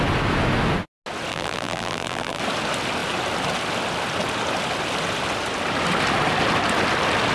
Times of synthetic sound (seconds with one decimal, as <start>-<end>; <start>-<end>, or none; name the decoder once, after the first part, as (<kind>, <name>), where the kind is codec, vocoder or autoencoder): 1.3-2.4 (vocoder, BigVGAN v2)